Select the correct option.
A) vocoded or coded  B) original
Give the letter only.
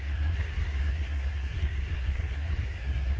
A